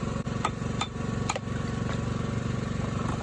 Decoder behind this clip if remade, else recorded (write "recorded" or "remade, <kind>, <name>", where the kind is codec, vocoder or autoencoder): remade, vocoder, BigVGAN v2